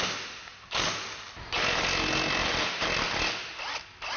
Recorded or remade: recorded